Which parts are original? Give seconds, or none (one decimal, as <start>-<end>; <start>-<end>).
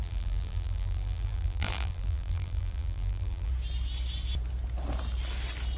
3.5-5.8